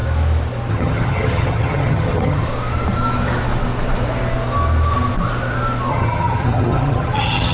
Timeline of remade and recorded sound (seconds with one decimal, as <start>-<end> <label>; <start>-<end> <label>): 0.0-0.7 recorded; 0.7-2.5 remade; 2.5-5.9 recorded; 5.9-7.5 remade